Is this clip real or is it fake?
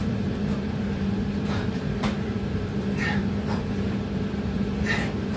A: fake